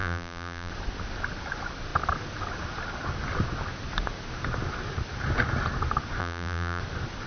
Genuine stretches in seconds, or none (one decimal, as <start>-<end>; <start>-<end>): 0.7-6.2; 6.8-7.3